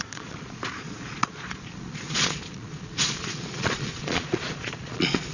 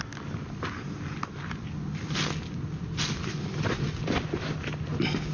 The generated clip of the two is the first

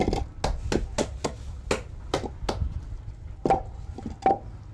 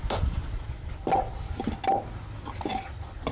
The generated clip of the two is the second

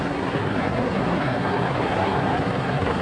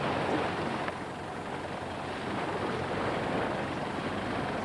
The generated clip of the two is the first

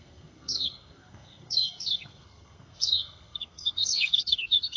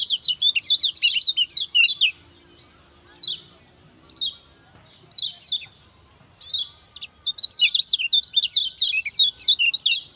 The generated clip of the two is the first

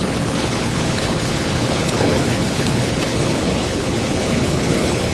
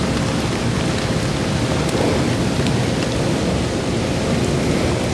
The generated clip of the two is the first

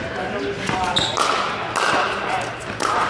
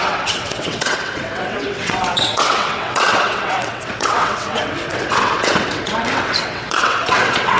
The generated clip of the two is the second